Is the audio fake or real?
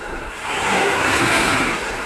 fake